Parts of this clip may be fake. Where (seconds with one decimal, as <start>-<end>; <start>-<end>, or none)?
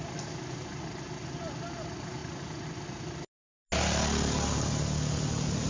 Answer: none